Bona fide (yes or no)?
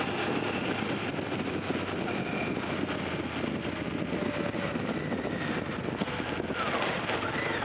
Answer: yes